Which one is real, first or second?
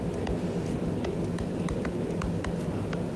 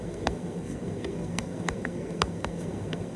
first